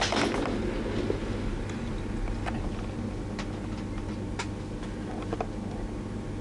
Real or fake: real